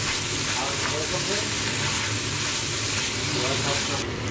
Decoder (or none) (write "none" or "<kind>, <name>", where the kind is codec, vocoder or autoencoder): none